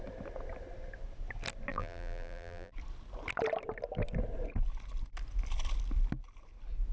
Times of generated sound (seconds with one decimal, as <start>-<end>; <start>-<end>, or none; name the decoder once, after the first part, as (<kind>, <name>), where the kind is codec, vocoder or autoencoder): 1.7-2.7 (vocoder, BigVGAN v2)